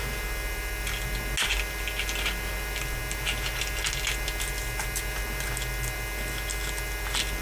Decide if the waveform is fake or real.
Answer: real